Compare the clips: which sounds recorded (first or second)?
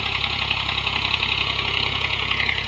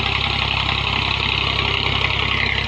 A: second